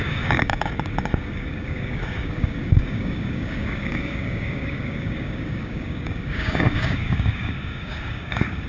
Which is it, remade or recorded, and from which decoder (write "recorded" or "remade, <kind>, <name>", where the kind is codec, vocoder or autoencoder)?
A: remade, codec, DAC